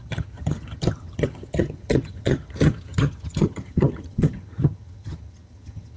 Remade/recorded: remade